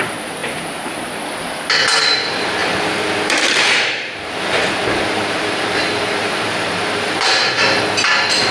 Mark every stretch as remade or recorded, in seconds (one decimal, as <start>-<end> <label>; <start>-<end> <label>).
0.0-0.4 recorded; 0.4-1.0 remade; 1.0-2.6 recorded; 2.6-7.6 remade; 7.6-8.5 recorded